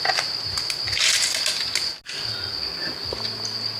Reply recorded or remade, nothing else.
recorded